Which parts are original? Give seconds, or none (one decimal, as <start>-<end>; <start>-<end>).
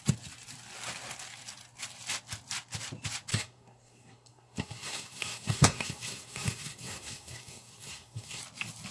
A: 0.0-3.3; 8.4-8.9